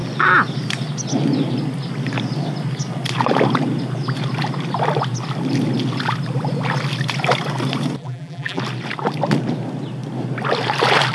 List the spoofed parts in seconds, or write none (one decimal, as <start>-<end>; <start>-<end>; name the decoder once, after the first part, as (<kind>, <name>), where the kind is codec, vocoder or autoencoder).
8.0-8.6 (vocoder, BigVGAN v2)